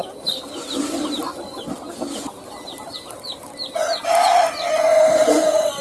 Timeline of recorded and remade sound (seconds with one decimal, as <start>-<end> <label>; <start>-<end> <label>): 0.0-4.9 recorded; 4.9-5.8 remade